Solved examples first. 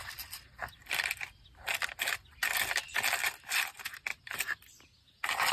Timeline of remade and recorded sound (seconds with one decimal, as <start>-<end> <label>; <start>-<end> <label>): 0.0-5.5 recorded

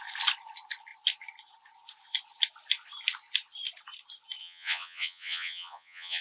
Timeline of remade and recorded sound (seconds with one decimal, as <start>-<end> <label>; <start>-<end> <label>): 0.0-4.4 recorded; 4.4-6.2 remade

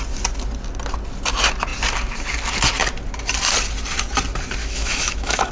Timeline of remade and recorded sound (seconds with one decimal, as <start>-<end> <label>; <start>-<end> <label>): 0.0-4.6 recorded; 4.6-5.5 remade

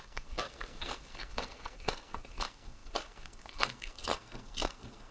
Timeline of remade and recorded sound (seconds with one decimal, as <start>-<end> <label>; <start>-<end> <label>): 0.0-5.1 remade

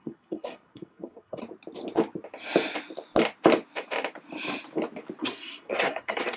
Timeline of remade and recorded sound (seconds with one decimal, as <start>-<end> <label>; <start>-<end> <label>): 0.0-1.4 remade; 1.4-5.2 recorded; 5.2-6.4 remade

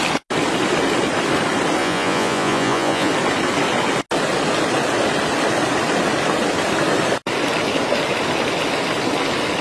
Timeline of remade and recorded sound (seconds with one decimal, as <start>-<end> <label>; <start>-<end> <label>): 0.0-1.8 recorded; 1.8-3.1 remade; 3.1-9.6 recorded

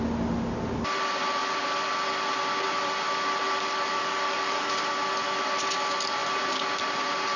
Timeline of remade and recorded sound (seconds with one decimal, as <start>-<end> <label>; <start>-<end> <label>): 0.0-3.9 recorded; 3.9-4.7 remade; 4.7-7.4 recorded